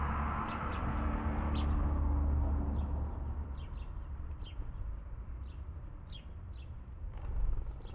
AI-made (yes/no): no